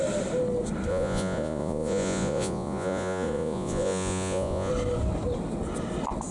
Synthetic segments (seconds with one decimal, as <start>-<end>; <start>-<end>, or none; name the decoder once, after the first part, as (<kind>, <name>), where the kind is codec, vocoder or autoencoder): 0.9-4.7 (vocoder, Vocos)